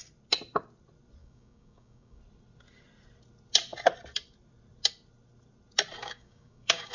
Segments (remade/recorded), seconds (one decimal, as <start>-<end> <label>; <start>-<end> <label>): 0.0-1.2 recorded; 1.2-2.2 remade; 2.2-6.0 recorded; 6.0-6.9 remade